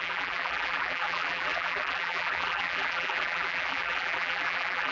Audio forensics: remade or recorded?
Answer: remade